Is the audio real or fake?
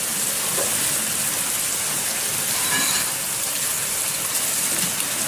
real